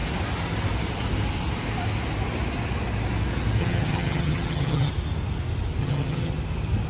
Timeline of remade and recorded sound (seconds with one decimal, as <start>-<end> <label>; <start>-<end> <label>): 0.0-3.6 recorded; 3.6-4.9 remade; 4.9-5.8 recorded; 5.8-6.3 remade; 6.3-6.9 recorded